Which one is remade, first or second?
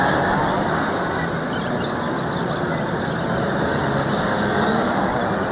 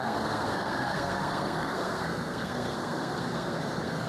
second